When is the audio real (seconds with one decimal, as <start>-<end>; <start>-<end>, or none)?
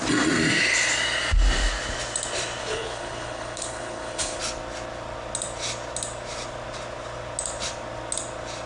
0.0-2.6; 4.4-8.7